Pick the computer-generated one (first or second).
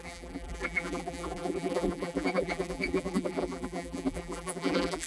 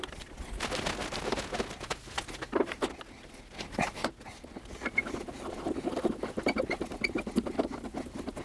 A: first